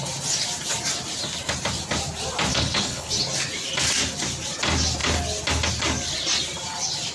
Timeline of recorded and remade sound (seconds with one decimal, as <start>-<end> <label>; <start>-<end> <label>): 0.0-2.5 recorded; 2.5-3.1 remade; 3.1-7.1 recorded